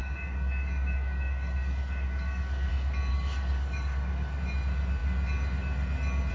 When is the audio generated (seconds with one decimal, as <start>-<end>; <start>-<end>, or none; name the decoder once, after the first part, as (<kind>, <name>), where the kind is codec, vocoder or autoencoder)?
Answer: 0.0-2.7 (codec, DAC); 3.1-4.4